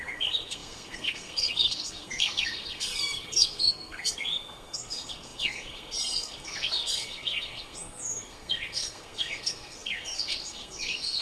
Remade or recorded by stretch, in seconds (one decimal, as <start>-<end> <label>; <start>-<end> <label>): 0.0-11.2 remade